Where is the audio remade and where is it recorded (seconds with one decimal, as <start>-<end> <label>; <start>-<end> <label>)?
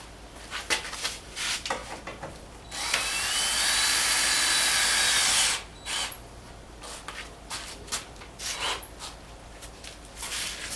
0.0-10.8 recorded